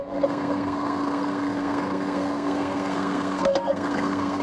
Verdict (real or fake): fake